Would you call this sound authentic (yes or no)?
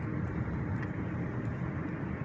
no